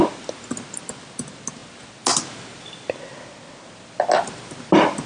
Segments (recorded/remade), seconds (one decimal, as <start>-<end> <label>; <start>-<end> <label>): 0.0-5.1 recorded